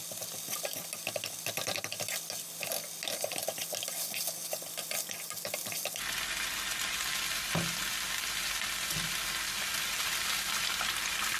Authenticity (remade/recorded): recorded